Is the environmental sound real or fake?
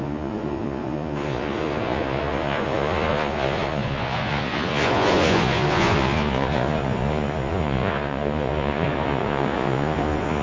fake